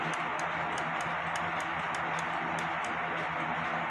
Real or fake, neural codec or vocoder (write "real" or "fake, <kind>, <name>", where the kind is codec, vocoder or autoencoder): real